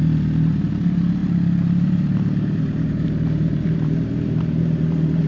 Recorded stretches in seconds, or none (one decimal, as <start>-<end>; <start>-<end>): 0.0-1.2; 4.4-5.3